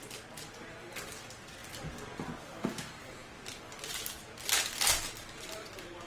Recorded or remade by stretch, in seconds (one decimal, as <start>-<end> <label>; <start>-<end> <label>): 0.0-6.1 recorded